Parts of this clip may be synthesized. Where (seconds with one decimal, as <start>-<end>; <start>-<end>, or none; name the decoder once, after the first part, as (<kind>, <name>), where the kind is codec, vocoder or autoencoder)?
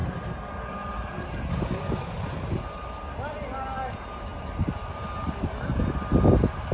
none